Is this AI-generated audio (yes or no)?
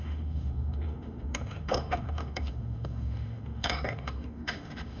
yes